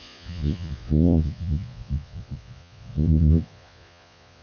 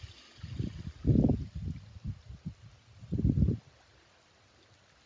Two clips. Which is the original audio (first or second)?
second